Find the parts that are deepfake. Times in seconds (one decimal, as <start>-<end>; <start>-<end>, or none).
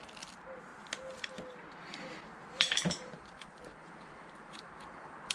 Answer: 2.3-5.3